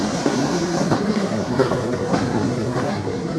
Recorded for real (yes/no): no